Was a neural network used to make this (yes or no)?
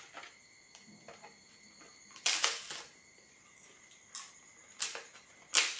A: no